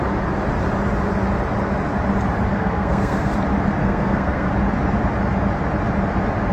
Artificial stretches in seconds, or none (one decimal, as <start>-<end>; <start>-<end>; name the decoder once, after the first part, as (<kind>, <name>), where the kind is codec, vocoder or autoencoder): 2.5-3.3 (codec, SNAC); 3.8-4.5